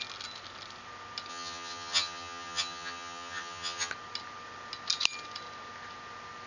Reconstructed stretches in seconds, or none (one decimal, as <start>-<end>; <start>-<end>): 1.3-3.9